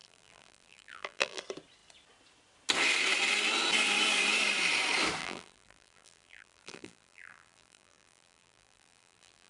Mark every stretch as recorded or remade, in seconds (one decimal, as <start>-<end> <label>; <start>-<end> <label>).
0.0-1.4 remade; 1.4-5.2 recorded; 5.2-9.5 remade